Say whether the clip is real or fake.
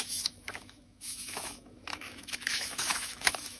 fake